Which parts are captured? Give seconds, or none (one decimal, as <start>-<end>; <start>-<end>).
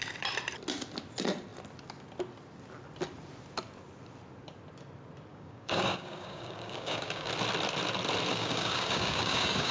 0.0-5.3; 7.3-8.3